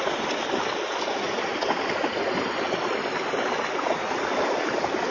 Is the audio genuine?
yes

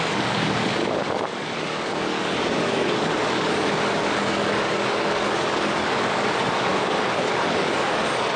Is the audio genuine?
no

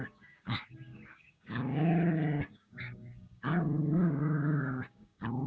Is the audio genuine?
no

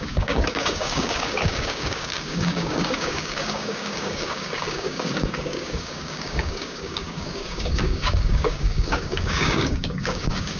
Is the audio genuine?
no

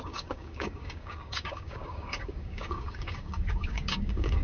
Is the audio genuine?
no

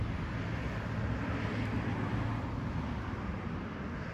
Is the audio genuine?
yes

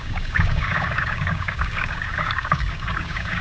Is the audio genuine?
no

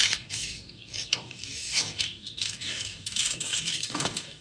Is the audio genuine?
no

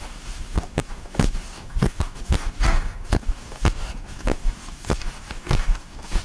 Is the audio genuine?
no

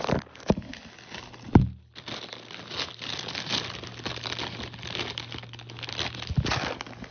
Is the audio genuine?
yes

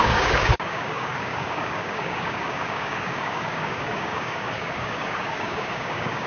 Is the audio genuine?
no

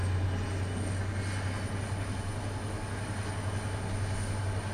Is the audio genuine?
yes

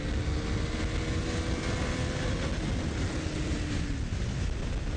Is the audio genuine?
yes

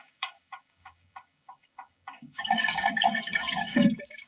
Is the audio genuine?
no